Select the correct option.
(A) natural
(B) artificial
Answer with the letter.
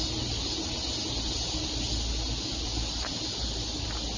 A